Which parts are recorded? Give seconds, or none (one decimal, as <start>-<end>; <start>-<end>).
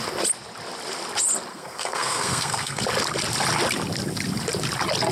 0.0-1.5; 2.8-5.1